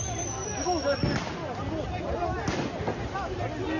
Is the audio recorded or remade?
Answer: recorded